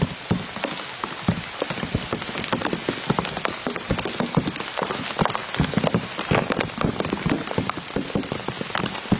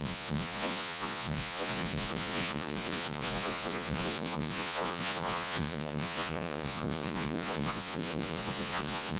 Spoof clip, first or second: second